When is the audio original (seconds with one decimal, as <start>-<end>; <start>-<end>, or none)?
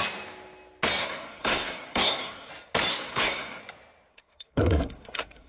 0.0-1.0; 2.5-2.9; 3.6-4.1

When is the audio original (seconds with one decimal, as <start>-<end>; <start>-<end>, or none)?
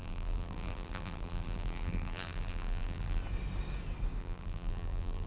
3.2-4.2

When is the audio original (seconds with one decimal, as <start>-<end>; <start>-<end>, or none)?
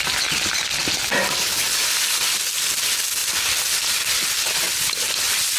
0.0-5.6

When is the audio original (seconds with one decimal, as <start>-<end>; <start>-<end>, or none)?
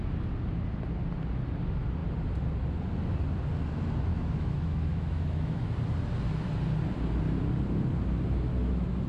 0.0-4.1; 5.7-8.5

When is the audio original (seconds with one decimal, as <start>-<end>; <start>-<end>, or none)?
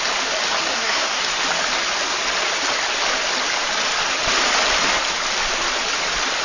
0.0-0.7; 1.2-6.4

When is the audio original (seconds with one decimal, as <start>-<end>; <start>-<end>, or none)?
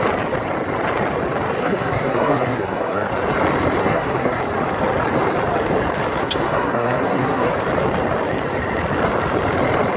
0.0-1.6; 3.1-3.8; 4.4-6.2; 7.5-10.0